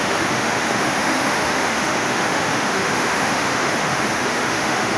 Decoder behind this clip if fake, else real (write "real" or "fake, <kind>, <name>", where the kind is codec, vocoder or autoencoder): fake, autoencoder, DAC-VAE